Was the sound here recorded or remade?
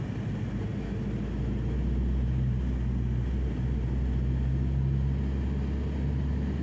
recorded